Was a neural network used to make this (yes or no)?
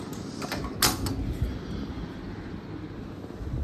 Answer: no